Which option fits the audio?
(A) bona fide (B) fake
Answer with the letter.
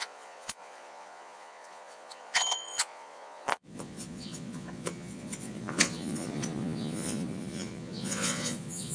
B